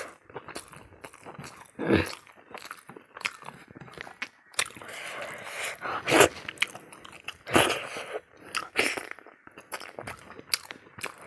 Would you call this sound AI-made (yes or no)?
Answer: no